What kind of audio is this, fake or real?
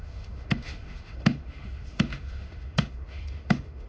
fake